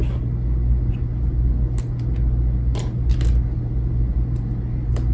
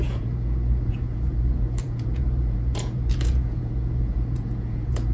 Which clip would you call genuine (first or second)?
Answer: first